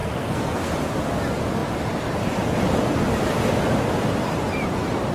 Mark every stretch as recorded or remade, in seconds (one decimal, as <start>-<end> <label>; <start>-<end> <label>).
0.0-0.7 remade; 0.7-5.1 recorded